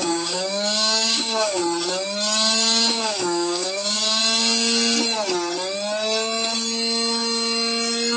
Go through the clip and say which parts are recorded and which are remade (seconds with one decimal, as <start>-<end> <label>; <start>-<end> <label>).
0.0-1.6 remade; 1.6-2.9 recorded; 2.9-4.2 remade; 4.2-8.2 recorded